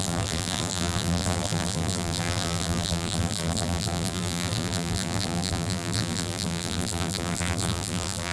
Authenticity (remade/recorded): remade